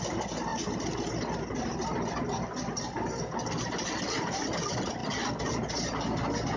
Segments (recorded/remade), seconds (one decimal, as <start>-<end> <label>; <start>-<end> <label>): 0.0-6.6 recorded